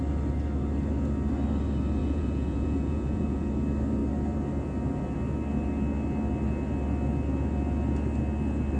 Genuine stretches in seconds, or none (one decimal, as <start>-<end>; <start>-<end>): 0.0-2.0; 3.5-8.8